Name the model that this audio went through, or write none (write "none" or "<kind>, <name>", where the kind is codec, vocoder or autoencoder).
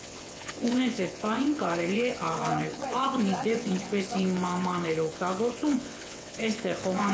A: vocoder, WaveNeXt